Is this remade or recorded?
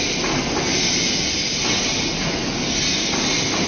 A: recorded